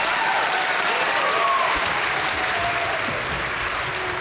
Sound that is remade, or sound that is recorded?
recorded